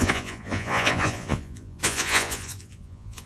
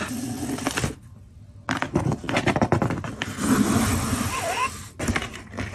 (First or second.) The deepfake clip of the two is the first